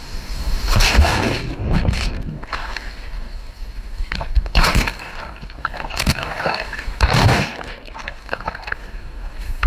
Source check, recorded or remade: remade